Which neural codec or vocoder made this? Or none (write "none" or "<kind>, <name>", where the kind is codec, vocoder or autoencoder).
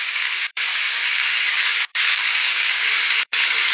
codec, DAC